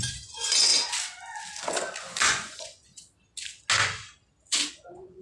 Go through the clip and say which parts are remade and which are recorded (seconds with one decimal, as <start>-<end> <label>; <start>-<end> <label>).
0.0-0.7 remade; 0.7-2.0 recorded; 2.0-2.9 remade; 2.9-4.7 recorded; 4.7-5.2 remade